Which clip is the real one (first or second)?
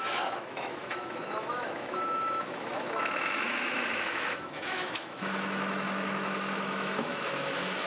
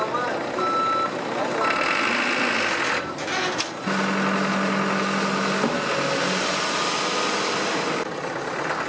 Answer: second